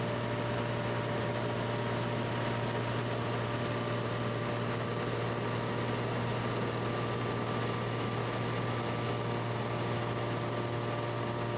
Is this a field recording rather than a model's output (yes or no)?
yes